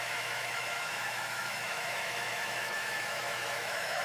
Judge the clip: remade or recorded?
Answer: remade